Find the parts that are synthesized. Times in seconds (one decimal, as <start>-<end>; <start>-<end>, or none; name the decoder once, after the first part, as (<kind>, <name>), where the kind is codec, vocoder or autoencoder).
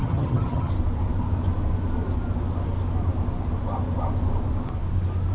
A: 0.0-0.7 (vocoder, HiFi-GAN)